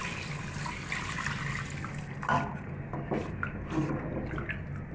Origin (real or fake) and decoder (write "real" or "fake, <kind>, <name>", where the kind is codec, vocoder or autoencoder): real